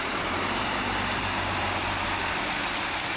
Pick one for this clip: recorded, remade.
recorded